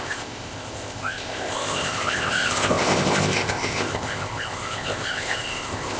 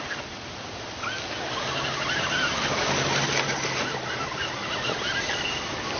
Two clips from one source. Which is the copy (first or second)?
first